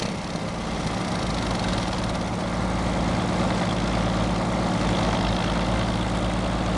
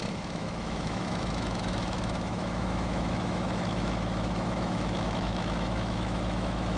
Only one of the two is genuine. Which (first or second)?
first